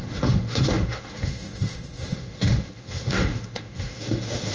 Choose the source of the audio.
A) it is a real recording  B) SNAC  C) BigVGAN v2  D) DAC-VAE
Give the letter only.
D